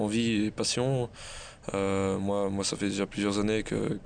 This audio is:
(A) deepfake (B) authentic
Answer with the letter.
B